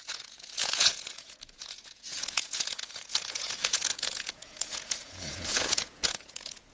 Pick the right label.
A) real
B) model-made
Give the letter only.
B